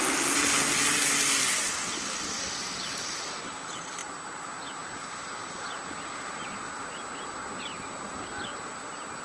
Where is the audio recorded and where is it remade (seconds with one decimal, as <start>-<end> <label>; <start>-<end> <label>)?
0.0-9.2 recorded